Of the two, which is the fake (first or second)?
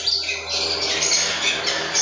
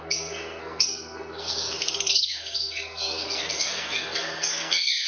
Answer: second